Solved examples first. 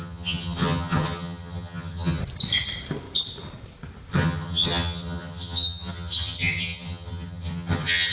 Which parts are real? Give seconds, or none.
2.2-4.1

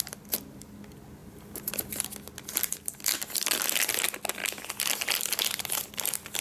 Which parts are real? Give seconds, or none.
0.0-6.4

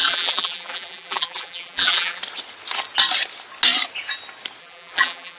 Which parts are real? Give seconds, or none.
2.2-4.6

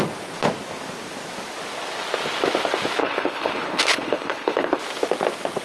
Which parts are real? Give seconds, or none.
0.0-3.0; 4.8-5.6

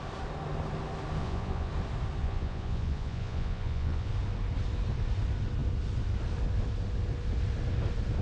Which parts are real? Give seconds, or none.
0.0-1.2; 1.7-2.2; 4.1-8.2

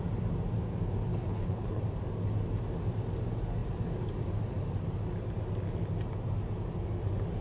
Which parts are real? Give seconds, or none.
0.0-1.1; 1.8-7.4